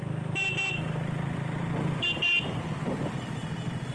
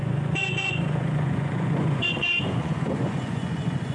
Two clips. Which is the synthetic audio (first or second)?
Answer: second